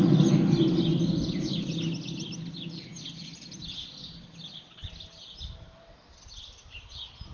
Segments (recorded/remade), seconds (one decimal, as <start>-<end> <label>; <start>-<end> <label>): 0.0-7.3 recorded